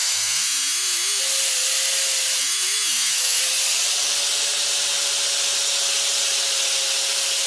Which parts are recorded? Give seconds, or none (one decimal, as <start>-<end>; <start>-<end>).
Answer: 1.2-2.4; 3.4-7.5